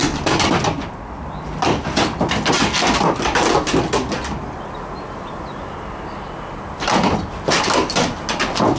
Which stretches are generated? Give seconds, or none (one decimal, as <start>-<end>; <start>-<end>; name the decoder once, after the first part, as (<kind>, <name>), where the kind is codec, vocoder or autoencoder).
0.0-0.5 (vocoder, BigVGAN v2)